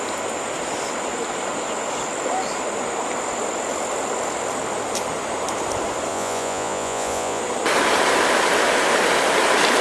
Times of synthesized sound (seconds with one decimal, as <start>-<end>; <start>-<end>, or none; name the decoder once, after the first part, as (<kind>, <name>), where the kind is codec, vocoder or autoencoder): 6.1-7.4 (vocoder, Vocos)